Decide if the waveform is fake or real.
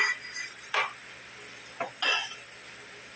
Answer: real